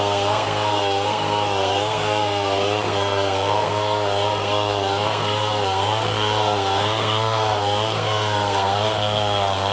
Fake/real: fake